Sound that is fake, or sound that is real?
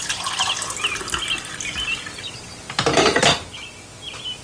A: real